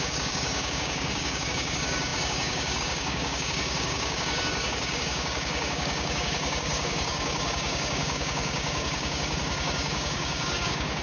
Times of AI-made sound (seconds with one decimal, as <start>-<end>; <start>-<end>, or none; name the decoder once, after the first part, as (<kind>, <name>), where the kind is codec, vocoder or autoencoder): 0.0-11.0 (codec, DAC)

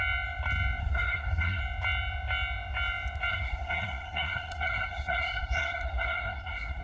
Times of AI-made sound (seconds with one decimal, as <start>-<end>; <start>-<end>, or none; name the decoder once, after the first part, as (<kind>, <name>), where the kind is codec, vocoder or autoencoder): 0.8-1.6 (codec, SNAC); 3.3-6.8

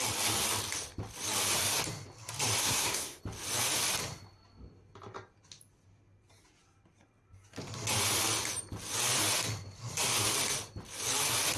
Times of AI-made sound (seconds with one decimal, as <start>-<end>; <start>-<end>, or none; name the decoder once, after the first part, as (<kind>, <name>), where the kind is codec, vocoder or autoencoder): 2.6-3.2 (codec, SNAC)

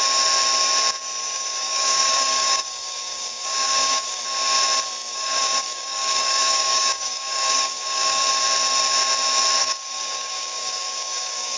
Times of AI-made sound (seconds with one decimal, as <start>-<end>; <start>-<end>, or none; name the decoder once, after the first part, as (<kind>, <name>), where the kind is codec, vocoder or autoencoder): 1.2-4.2 (codec, DAC); 5.1-8.3; 9.6-11.6